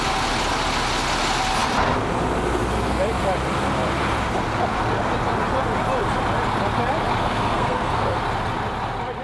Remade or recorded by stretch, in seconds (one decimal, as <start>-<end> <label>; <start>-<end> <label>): 0.0-7.2 recorded; 7.2-8.2 remade; 8.2-9.2 recorded